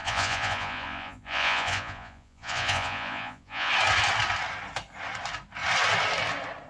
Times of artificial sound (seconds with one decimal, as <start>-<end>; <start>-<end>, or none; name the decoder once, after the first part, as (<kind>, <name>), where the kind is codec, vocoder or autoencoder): 0.0-3.7 (vocoder, Vocos)